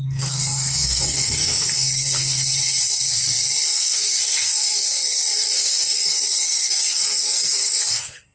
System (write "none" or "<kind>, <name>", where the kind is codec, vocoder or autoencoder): codec, SNAC